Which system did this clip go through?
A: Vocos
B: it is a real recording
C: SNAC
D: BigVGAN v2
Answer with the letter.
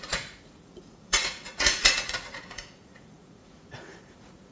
A